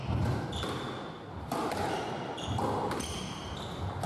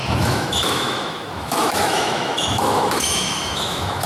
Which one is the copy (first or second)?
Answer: second